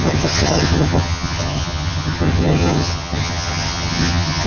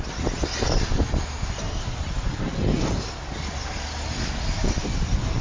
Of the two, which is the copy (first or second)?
first